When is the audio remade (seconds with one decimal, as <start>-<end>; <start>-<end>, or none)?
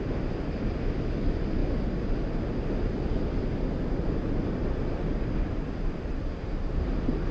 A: none